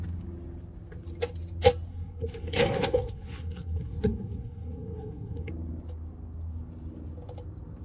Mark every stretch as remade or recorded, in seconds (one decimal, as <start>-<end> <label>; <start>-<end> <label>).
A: 0.0-1.9 recorded; 1.9-5.5 remade; 5.5-7.8 recorded

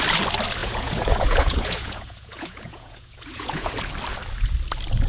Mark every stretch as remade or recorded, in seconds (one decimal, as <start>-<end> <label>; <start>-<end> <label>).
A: 0.0-0.6 recorded; 0.6-3.7 remade; 3.7-5.1 recorded

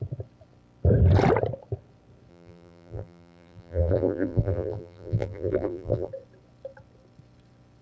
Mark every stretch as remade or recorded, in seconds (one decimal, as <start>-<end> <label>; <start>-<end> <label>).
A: 0.0-2.3 recorded; 2.3-6.1 remade; 6.1-7.8 recorded

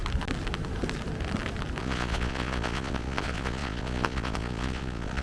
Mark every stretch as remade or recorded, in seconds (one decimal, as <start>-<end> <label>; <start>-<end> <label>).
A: 0.0-1.8 recorded; 1.8-5.2 remade

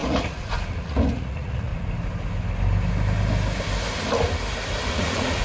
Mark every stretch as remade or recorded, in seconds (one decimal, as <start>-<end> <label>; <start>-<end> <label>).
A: 0.0-1.7 remade; 1.7-4.9 recorded; 4.9-5.4 remade